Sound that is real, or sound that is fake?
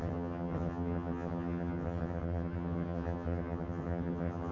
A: fake